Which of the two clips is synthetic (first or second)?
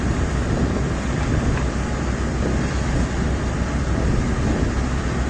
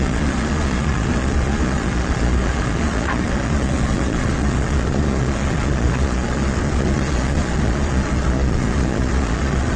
second